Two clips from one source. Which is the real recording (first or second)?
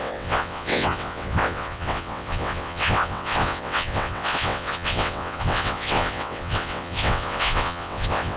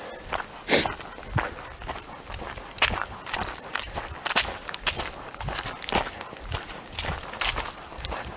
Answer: second